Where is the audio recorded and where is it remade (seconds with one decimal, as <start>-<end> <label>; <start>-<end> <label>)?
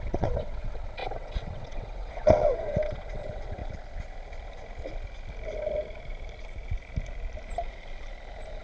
0.0-3.6 remade; 3.6-8.6 recorded